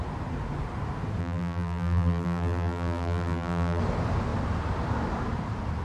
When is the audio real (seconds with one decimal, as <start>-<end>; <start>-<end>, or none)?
0.0-1.2; 3.8-5.8